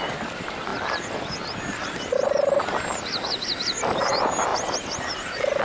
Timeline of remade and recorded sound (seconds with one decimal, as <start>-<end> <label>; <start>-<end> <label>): 0.0-5.6 recorded